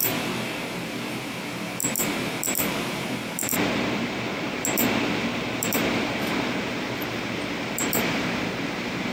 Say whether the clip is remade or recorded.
remade